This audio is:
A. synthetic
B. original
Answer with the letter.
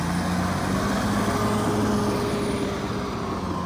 B